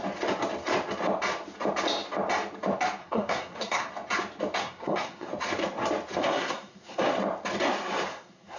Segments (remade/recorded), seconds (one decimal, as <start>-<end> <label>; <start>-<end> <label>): 0.0-3.0 recorded; 3.0-3.9 remade; 3.9-4.6 recorded; 4.6-5.3 remade; 5.3-6.2 recorded; 6.2-7.0 remade; 7.0-8.1 recorded; 8.1-8.6 remade